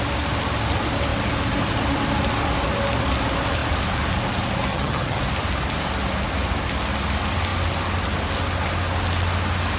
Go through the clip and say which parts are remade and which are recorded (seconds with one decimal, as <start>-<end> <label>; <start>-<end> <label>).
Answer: 0.0-4.7 recorded; 4.7-5.2 remade; 5.2-9.8 recorded